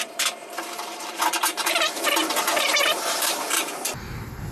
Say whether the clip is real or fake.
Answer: fake